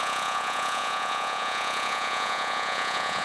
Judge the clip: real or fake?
fake